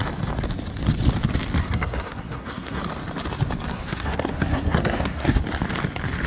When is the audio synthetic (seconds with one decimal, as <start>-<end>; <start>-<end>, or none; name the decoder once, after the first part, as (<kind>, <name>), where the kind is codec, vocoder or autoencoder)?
1.6-2.8 (codec, SNAC); 3.7-5.4